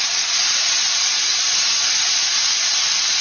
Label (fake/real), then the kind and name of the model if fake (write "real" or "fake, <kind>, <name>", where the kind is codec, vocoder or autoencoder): real